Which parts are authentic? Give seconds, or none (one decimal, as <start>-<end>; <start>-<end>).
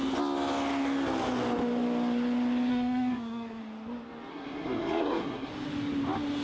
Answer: 0.0-2.7; 3.6-4.3; 5.5-6.4